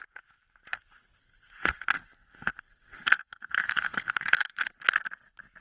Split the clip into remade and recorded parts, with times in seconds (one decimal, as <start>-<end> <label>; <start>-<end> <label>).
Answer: 0.0-1.2 recorded; 1.2-4.6 remade; 4.6-5.6 recorded